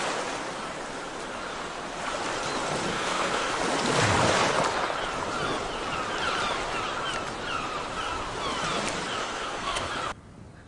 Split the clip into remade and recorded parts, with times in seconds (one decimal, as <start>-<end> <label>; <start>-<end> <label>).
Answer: 0.0-2.9 recorded; 2.9-3.5 remade; 3.5-9.2 recorded; 9.2-9.9 remade; 9.9-10.7 recorded